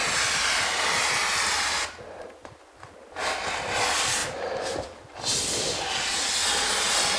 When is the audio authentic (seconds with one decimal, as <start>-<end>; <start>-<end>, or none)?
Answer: 0.0-7.2